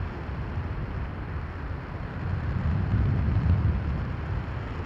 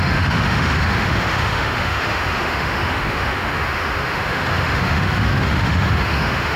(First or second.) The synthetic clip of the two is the second